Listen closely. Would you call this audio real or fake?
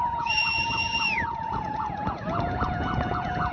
fake